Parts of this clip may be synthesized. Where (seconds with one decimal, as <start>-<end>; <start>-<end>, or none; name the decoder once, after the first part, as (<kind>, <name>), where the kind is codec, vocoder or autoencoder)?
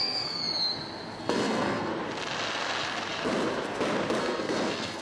0.0-0.4 (codec, SNAC); 1.2-1.9; 4.2-5.0